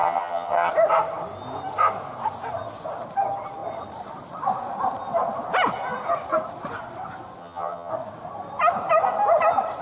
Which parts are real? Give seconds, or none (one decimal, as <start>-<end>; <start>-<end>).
0.7-7.4; 7.9-9.8